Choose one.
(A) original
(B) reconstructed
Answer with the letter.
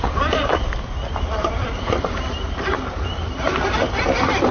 B